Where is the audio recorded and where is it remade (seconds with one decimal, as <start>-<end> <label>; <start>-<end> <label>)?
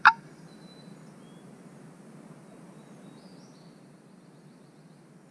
0.0-5.3 recorded